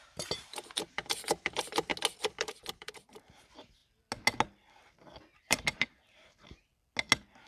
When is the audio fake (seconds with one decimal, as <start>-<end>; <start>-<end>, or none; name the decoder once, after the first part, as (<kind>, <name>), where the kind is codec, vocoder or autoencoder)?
0.0-1.9 (vocoder, BigVGAN v2); 2.4-3.8; 5.4-6.7